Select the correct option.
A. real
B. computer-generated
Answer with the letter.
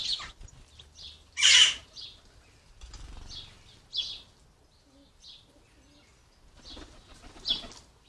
A